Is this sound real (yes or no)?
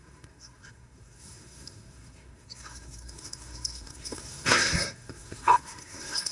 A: no